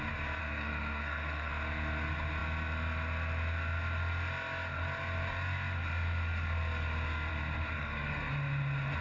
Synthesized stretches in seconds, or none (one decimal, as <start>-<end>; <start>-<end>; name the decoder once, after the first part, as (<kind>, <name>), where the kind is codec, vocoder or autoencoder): 0.4-1.5 (codec, SNAC); 7.8-8.3